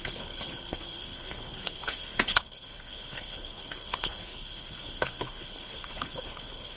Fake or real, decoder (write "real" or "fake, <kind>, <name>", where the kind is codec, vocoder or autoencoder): fake, codec, HILCodec